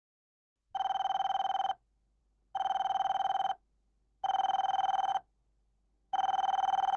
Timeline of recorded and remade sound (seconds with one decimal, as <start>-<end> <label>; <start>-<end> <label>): 0.0-7.0 recorded

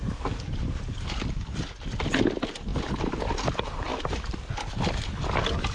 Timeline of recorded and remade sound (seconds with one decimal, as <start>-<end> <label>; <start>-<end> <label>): 0.0-5.7 recorded